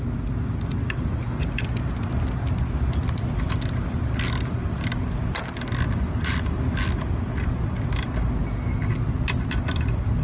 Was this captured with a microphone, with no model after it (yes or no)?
yes